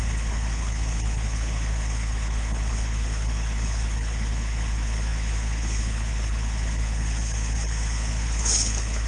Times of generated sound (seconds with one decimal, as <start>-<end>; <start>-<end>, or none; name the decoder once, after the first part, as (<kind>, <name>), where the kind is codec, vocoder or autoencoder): 0.0-9.1 (codec, HILCodec)

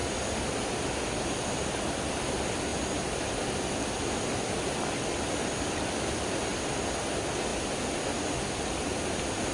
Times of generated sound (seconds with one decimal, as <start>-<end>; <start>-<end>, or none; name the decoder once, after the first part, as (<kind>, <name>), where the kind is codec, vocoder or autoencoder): none

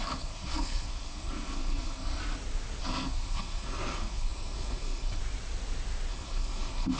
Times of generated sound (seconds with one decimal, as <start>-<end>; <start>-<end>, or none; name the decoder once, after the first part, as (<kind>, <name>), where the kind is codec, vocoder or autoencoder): 0.0-2.2 (codec, SNAC); 2.8-5.2; 6.1-7.0

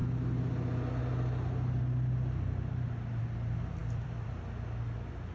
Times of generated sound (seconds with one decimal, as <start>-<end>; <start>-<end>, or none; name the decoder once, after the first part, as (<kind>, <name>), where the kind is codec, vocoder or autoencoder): 3.8-4.3 (vocoder, BigVGAN v2)

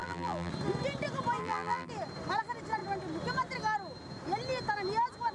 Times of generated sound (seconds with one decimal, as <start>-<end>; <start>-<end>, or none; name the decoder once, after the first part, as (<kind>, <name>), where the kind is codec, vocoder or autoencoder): 0.0-0.5 (vocoder, BigVGAN v2); 1.4-1.9